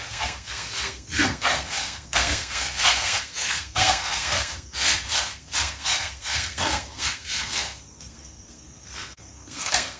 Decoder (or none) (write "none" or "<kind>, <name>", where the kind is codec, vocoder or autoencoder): codec, SNAC